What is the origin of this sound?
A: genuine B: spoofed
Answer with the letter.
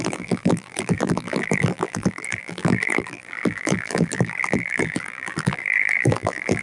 B